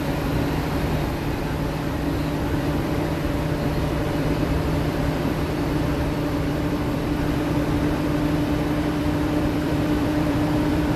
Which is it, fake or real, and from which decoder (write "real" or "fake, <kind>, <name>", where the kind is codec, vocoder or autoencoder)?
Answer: fake, vocoder, BigVGAN v2